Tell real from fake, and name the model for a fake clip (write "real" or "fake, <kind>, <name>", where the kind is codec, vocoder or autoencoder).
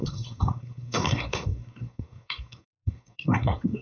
fake, codec, SNAC